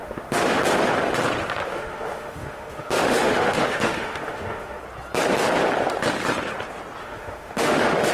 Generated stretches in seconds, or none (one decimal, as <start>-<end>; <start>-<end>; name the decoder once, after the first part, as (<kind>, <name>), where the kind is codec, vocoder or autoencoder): 0.0-0.6 (autoencoder, DAC-VAE); 1.6-4.8; 7.0-8.1